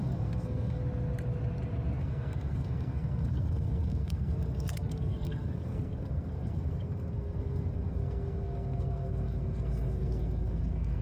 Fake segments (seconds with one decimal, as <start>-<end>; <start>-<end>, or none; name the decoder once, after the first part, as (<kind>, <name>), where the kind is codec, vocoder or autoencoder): 0.0-0.8 (codec, SNAC); 2.0-11.0